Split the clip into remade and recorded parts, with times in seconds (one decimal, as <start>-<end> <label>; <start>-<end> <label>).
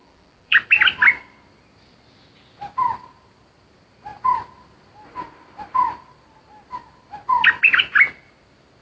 0.0-0.6 remade; 0.6-8.8 recorded